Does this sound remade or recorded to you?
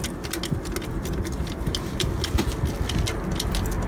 recorded